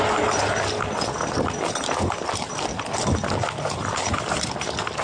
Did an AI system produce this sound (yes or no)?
no